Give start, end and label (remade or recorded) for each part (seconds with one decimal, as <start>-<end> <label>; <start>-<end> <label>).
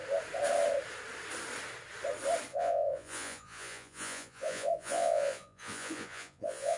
0.0-2.5 recorded; 2.5-6.8 remade